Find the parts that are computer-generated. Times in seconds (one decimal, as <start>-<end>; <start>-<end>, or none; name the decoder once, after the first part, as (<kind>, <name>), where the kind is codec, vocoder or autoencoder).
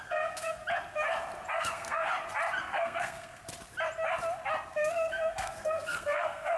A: 0.0-0.6 (codec, SNAC); 1.5-2.1; 2.6-3.4; 4.7-6.6